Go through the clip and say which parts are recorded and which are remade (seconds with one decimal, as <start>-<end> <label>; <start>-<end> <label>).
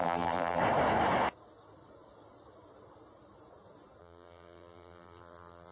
0.0-0.6 remade; 0.6-4.0 recorded; 4.0-5.7 remade